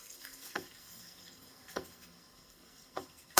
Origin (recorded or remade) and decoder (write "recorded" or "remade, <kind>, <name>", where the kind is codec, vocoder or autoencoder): remade, codec, SNAC